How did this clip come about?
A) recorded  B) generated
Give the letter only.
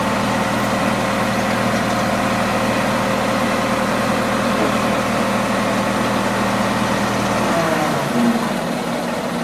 A